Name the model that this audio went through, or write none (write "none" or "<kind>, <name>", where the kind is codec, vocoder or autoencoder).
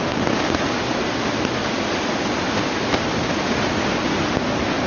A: none